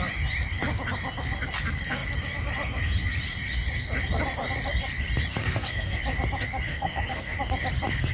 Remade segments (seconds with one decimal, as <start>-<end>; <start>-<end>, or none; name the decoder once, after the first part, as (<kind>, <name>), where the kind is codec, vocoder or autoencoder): 5.4-6.0 (codec, SNAC); 6.7-7.4